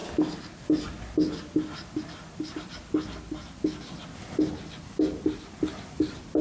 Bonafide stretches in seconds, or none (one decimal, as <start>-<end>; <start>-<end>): 0.0-6.4